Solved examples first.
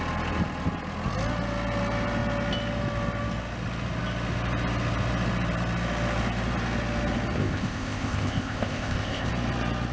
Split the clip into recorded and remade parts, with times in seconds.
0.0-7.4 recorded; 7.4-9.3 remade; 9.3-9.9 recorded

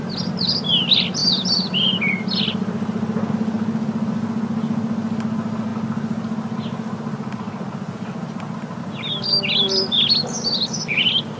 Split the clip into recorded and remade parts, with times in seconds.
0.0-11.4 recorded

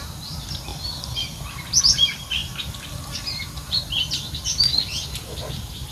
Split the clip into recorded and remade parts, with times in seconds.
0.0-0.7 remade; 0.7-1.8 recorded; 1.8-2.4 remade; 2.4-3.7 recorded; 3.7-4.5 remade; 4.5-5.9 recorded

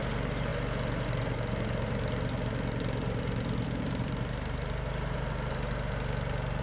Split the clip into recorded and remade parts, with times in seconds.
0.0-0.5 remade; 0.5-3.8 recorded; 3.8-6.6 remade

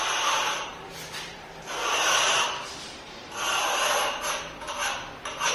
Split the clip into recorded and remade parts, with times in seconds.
0.0-5.5 remade

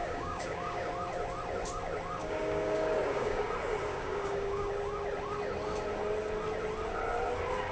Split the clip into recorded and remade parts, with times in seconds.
0.0-0.9 remade; 0.9-2.2 recorded; 2.2-3.5 remade; 3.5-3.9 recorded; 3.9-4.7 remade; 4.7-7.7 recorded

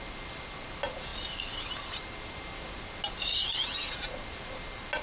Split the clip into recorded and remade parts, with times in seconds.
0.0-5.0 recorded